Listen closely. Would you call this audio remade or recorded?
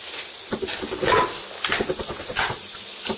recorded